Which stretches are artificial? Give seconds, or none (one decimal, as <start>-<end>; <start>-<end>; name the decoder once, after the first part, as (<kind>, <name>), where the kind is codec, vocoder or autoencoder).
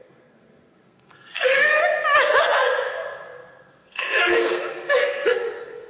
0.0-1.7 (codec, SNAC); 2.4-5.9